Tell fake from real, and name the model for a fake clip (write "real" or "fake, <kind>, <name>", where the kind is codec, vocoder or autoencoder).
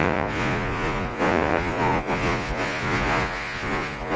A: fake, vocoder, Vocos